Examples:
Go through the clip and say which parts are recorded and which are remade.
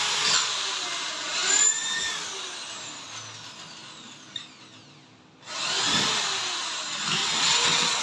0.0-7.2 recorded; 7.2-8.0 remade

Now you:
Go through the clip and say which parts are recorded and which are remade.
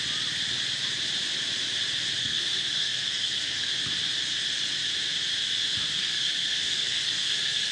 0.0-2.2 recorded; 2.2-3.7 remade; 3.7-6.0 recorded; 6.0-7.7 remade